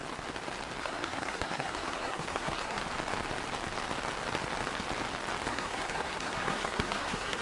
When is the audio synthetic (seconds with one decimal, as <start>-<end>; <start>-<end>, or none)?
0.8-2.8; 5.5-7.4